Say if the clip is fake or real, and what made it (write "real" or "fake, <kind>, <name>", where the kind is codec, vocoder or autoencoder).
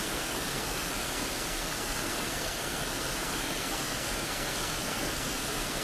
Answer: fake, codec, SNAC